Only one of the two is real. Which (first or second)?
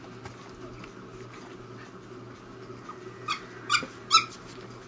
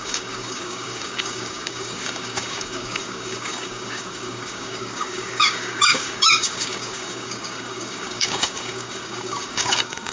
first